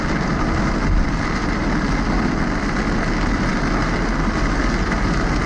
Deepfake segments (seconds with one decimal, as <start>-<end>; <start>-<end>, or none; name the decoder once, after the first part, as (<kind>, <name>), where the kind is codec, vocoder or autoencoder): none